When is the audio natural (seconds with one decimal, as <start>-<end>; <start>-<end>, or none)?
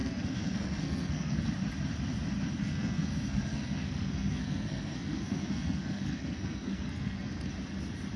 1.4-2.6; 7.5-8.2